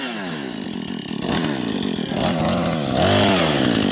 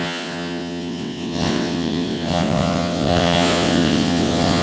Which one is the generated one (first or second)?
second